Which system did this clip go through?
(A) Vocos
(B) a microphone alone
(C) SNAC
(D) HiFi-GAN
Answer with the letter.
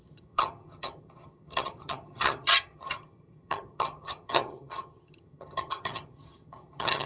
D